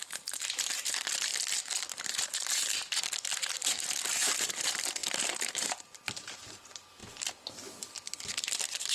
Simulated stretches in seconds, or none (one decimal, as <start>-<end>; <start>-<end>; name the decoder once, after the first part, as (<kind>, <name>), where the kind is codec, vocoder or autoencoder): 0.0-1.3 (vocoder, BigVGAN v2); 2.0-7.0

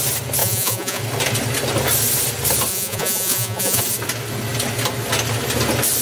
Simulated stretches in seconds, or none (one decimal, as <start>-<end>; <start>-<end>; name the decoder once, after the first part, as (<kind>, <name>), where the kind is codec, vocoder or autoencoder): 0.4-1.0 (vocoder, Vocos); 2.7-3.8

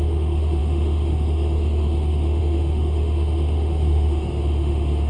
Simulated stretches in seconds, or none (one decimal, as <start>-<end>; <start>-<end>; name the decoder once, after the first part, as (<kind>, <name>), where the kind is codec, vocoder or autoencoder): 0.0-5.1 (autoencoder, DAC-VAE)

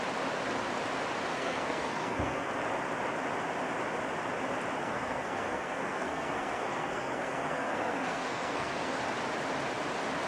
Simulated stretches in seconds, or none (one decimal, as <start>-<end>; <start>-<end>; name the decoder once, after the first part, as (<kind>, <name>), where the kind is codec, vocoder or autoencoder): 1.3-2.5 (codec, SNAC); 4.8-9.0

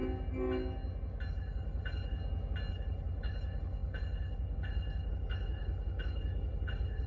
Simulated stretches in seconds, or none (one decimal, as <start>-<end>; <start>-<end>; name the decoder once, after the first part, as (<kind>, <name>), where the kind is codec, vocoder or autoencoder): 1.3-2.2 (codec, HILCodec); 2.7-7.1